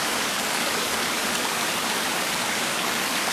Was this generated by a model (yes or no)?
yes